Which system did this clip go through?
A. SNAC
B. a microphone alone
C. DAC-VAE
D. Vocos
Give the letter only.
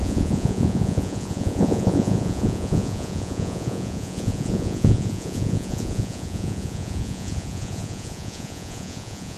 D